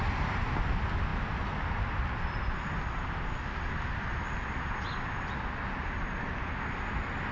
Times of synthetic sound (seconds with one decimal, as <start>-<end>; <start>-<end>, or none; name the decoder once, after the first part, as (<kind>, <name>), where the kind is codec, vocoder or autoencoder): none